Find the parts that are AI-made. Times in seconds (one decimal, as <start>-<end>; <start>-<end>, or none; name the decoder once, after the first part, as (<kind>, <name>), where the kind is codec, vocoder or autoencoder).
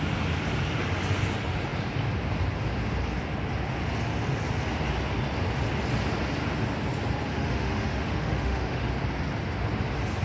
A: 7.3-8.9 (autoencoder, DAC-VAE)